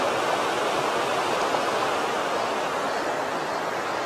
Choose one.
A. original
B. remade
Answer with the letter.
A